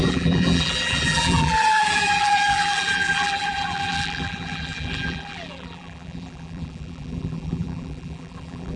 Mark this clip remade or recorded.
remade